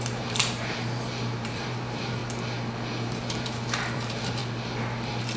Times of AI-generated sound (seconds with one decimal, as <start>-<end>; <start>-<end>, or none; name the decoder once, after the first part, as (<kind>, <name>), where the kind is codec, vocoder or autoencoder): 0.0-2.2 (vocoder, BigVGAN v2); 3.0-4.4